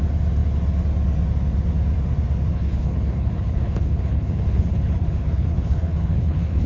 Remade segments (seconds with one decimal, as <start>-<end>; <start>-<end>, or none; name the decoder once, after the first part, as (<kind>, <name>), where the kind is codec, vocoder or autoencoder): 2.5-6.7 (codec, HILCodec)